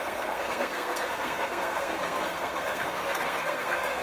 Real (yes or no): no